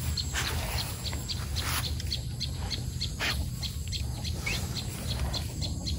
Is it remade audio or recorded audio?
recorded